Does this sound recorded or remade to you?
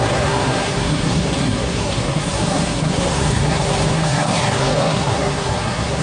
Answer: remade